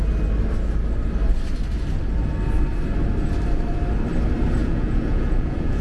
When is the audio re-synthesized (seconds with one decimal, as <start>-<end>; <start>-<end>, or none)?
4.6-5.8